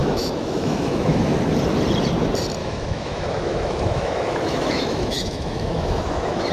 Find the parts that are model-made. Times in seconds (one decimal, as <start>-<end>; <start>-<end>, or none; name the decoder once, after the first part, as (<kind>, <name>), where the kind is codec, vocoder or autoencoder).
0.0-1.1 (autoencoder, DAC-VAE); 2.6-6.5